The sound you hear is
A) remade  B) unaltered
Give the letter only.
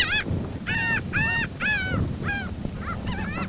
A